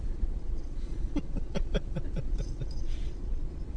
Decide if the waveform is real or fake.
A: fake